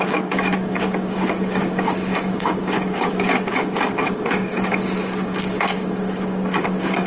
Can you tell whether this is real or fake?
fake